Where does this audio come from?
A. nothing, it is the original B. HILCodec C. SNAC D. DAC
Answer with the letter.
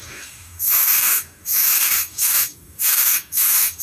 D